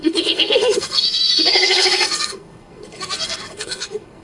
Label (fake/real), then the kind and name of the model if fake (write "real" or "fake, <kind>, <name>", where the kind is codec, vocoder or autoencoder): fake, codec, SNAC